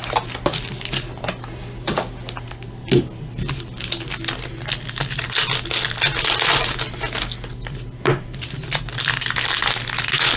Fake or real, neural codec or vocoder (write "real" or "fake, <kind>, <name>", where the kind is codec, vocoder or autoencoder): real